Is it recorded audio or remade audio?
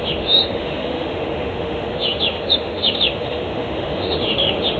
remade